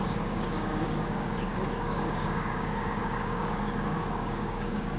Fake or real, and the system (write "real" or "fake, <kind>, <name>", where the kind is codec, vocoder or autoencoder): fake, codec, DAC